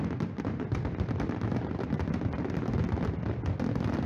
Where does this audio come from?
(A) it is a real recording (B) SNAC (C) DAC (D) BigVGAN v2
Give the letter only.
A